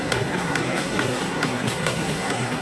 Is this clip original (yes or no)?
no